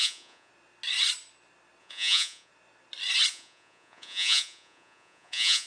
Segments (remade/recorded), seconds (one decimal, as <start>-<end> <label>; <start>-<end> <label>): 0.0-0.5 remade; 0.5-1.8 recorded; 1.8-2.5 remade; 2.5-3.3 recorded; 3.3-5.7 remade